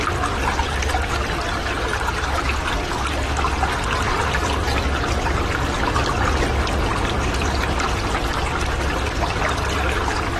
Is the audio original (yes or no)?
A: yes